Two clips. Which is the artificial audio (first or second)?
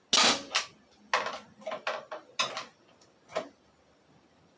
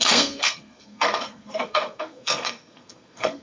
second